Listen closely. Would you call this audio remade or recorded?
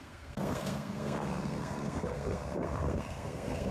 remade